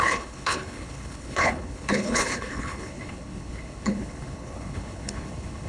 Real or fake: fake